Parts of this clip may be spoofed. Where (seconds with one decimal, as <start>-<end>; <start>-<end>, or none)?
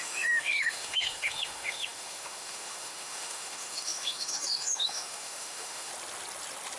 0.0-5.9